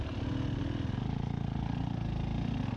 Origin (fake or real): real